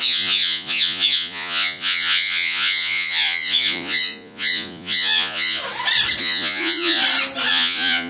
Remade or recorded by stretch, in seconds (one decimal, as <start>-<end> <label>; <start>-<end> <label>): 0.0-5.6 remade; 5.6-6.2 recorded; 6.2-7.0 remade; 7.0-7.5 recorded; 7.5-8.1 remade